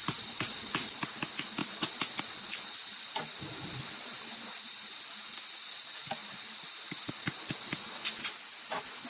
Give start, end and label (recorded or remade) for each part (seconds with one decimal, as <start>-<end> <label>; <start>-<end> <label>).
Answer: 0.0-2.9 recorded; 2.9-4.3 remade; 4.3-6.2 recorded; 6.2-7.1 remade; 7.1-9.1 recorded